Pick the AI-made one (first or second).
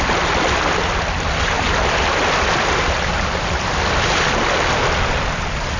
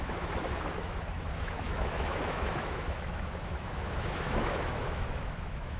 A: second